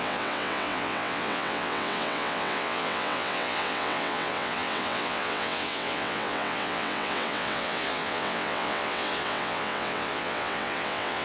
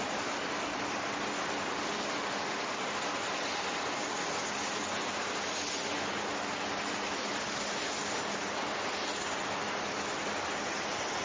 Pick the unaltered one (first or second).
second